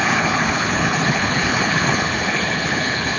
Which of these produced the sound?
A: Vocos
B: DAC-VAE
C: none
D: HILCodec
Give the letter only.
D